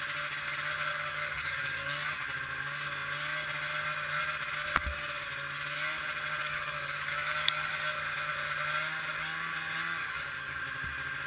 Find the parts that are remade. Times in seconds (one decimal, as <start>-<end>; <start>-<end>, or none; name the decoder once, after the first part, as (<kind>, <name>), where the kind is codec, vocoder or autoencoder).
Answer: 0.9-2.1 (codec, DAC); 6.4-7.7; 10.0-10.6